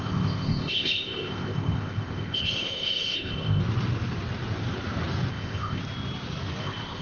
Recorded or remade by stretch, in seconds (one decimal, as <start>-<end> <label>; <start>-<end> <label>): 0.0-3.6 remade; 3.6-5.3 recorded; 5.3-5.8 remade; 5.8-6.6 recorded; 6.6-7.0 remade